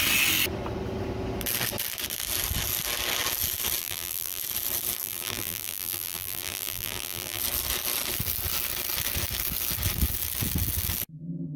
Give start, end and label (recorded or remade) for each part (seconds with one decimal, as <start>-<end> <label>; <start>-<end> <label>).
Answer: 0.0-3.8 recorded; 3.8-4.4 remade; 4.4-5.0 recorded; 5.0-7.4 remade; 7.4-11.6 recorded